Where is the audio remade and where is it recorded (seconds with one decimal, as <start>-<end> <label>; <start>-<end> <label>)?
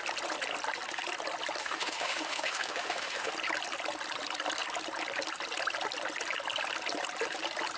0.0-1.6 recorded; 1.6-3.3 remade; 3.3-7.8 recorded